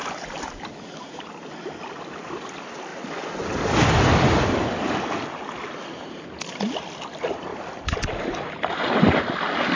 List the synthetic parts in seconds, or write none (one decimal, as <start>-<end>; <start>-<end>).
none